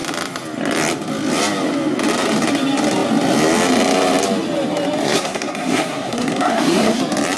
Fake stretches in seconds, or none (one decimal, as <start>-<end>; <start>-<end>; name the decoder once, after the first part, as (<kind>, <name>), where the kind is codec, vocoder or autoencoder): 5.0-7.0 (codec, SNAC)